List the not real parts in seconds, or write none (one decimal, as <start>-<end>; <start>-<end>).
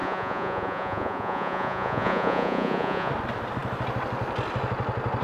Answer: 0.0-3.1